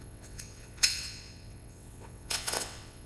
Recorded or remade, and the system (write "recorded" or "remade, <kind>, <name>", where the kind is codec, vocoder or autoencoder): remade, vocoder, WaveNeXt